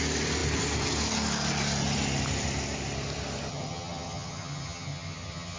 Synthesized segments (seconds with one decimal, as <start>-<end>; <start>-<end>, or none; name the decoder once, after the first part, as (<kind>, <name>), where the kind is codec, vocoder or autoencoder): 3.5-5.6 (vocoder, HiFi-GAN)